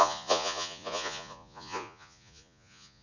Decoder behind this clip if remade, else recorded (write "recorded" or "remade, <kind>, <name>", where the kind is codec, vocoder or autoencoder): remade, vocoder, Vocos